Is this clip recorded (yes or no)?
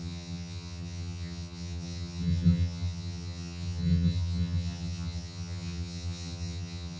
no